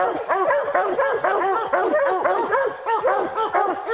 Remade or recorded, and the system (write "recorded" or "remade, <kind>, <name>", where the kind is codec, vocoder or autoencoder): recorded